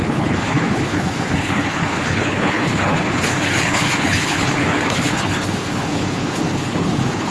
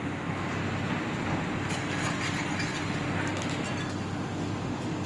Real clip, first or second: second